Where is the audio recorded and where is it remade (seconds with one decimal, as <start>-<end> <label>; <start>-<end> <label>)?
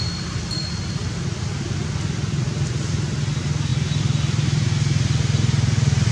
0.0-1.0 recorded; 1.0-3.3 remade; 3.3-6.1 recorded